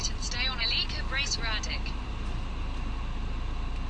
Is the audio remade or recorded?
recorded